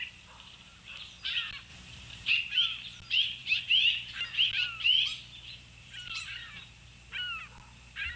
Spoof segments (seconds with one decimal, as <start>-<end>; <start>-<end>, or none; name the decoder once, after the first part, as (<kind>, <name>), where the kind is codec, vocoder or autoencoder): 1.7-2.3 (vocoder, BigVGAN v2); 3.4-4.3; 5.1-7.1